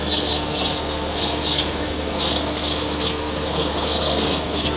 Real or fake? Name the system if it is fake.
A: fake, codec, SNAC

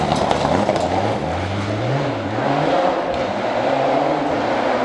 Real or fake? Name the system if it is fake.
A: real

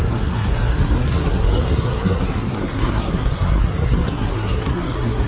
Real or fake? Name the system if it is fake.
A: fake, codec, SNAC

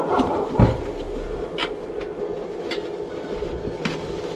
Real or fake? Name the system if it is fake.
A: real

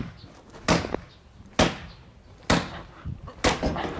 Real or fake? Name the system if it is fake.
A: real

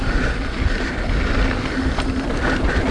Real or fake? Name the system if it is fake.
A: real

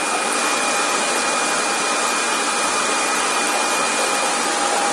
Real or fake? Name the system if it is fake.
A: real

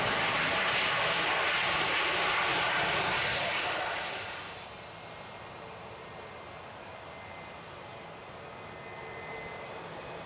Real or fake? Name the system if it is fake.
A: real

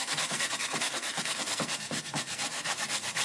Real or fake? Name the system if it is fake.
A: fake, codec, SNAC